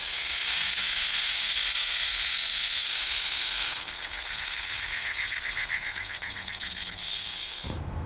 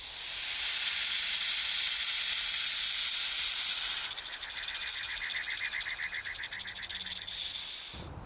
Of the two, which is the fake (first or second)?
first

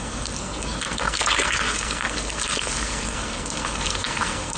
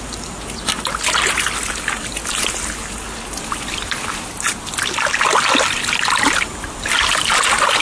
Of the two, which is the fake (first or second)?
first